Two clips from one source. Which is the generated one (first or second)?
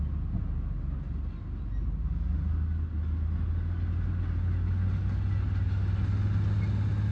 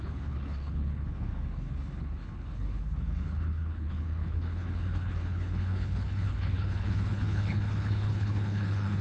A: second